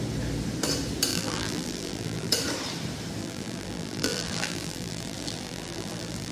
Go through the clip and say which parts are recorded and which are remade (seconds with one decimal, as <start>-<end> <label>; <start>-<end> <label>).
0.0-1.1 recorded; 1.1-2.3 remade; 2.3-3.2 recorded; 3.2-6.3 remade